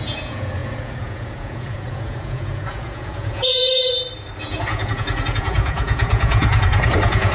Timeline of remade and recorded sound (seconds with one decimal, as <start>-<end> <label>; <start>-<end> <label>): 0.0-3.6 remade; 3.6-4.4 recorded; 4.4-7.3 remade